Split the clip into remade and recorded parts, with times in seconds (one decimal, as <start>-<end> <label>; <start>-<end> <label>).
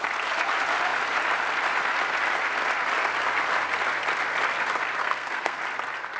0.0-5.0 recorded; 5.0-5.6 remade; 5.6-6.2 recorded